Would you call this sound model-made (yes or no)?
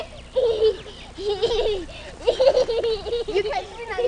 no